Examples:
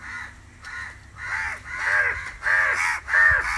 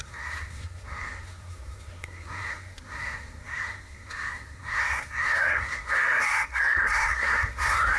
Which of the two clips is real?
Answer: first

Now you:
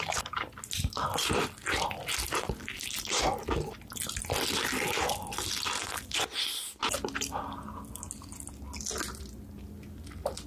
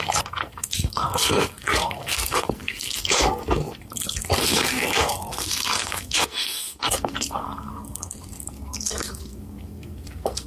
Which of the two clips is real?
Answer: first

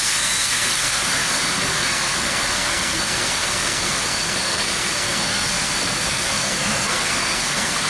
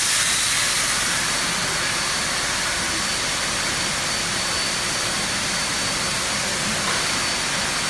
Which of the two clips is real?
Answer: second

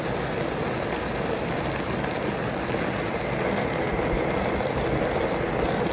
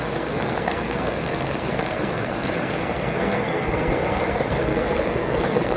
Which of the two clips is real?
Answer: first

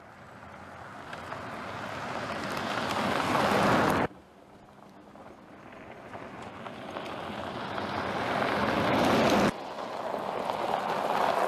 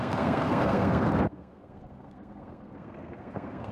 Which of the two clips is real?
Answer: first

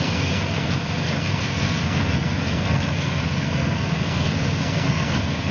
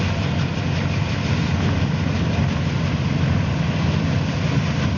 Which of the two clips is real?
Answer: second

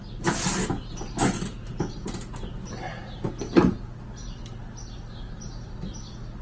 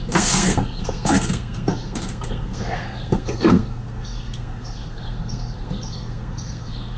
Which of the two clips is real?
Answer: first